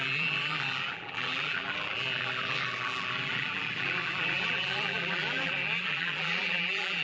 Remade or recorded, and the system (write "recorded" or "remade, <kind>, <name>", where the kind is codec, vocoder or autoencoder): remade, vocoder, BigVGAN v2